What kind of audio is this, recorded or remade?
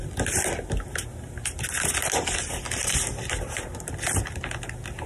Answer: recorded